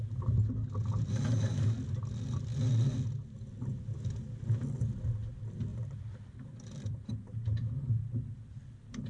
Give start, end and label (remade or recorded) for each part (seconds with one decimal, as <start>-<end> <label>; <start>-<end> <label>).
0.0-5.7 recorded; 5.7-7.1 remade; 7.1-9.1 recorded